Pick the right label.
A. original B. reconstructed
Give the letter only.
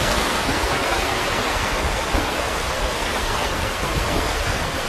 B